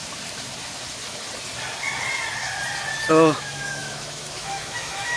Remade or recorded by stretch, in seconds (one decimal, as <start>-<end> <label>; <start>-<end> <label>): 0.0-3.1 recorded; 3.1-5.2 remade